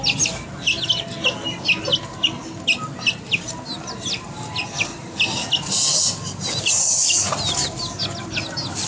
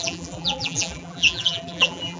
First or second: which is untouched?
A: first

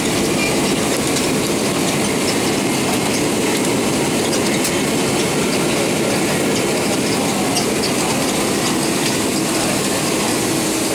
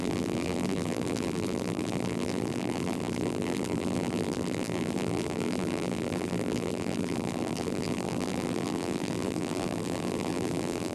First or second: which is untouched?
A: first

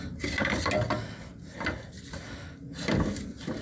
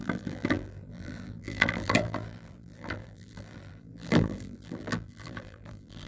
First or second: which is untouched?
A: first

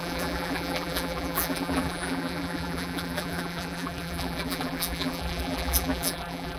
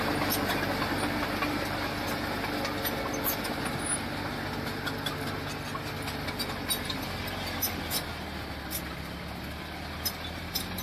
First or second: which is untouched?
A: second